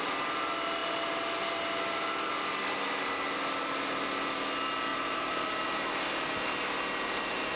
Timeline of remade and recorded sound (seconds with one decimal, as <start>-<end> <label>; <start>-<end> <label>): 0.0-4.9 recorded; 4.9-5.9 remade; 5.9-7.6 recorded